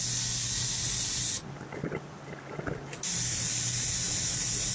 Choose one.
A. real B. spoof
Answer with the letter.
A